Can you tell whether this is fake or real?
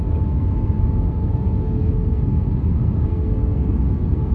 fake